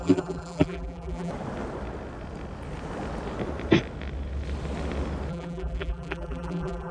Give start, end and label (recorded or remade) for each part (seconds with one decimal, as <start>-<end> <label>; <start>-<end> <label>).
0.0-1.3 remade; 1.3-5.3 recorded; 5.3-6.9 remade